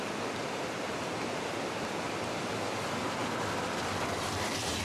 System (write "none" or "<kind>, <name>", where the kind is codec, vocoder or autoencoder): none